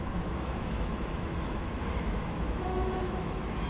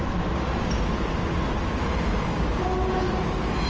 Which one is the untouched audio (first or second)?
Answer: second